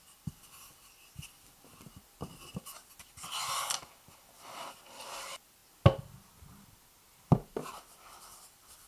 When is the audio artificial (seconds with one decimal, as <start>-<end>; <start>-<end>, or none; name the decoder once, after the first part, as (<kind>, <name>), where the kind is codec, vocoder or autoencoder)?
none

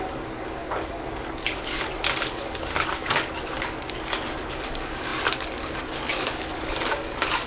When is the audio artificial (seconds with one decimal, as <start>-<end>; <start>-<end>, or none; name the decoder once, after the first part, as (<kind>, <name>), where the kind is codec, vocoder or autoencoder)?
0.0-7.5 (codec, DAC)